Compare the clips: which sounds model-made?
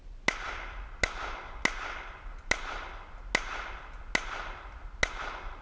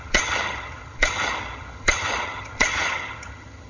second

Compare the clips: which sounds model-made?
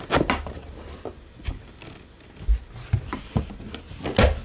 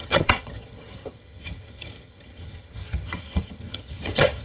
second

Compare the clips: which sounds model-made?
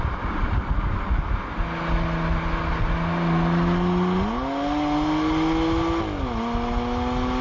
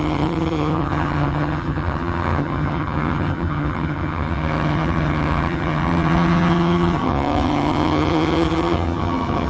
second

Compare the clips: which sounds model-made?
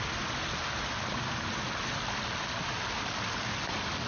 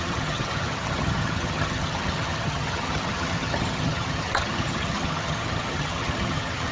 second